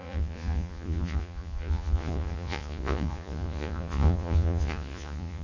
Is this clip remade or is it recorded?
remade